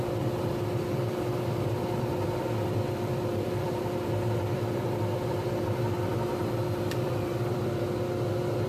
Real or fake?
fake